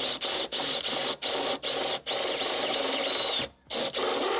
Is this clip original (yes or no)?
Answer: yes